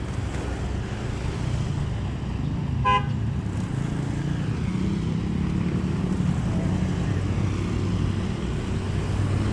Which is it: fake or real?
real